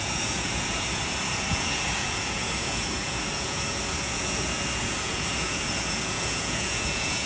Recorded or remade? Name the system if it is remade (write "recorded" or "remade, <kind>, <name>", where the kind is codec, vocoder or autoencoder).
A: remade, vocoder, Vocos